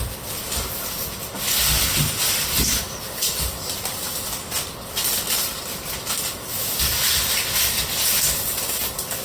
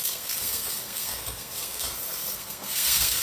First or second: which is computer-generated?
second